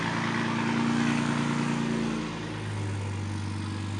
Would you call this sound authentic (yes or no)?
yes